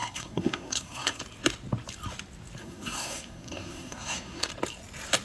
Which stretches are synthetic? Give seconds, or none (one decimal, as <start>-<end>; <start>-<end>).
0.0-1.2; 2.6-4.5

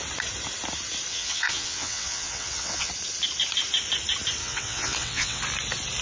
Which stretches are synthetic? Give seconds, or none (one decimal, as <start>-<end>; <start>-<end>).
1.1-2.9; 4.4-5.4

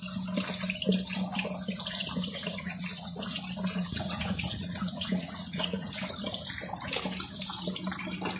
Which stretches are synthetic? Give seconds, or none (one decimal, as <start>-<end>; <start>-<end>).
2.0-3.4; 3.8-6.2

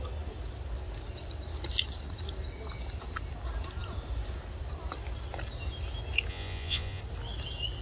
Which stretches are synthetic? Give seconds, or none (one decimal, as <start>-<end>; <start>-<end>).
6.3-7.0

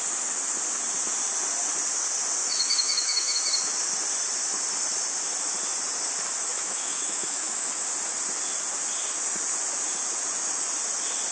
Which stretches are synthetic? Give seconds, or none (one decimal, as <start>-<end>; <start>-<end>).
2.4-3.4; 6.5-7.7

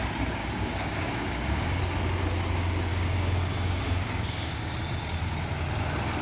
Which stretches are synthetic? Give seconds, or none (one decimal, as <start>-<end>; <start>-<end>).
0.4-1.8; 2.9-4.7

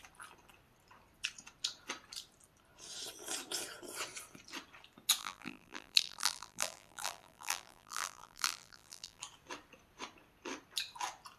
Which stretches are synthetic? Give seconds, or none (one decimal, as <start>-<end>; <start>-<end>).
5.2-9.2

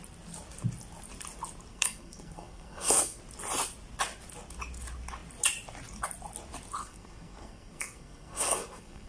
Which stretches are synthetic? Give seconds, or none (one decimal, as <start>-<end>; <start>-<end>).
1.7-3.2; 6.8-9.1